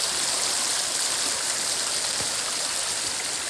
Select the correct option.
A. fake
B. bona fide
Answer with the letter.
B